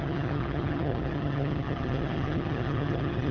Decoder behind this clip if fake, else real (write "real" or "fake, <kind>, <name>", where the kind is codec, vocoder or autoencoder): fake, vocoder, HiFi-GAN